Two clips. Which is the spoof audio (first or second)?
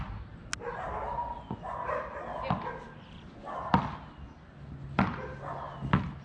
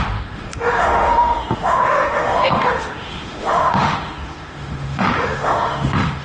second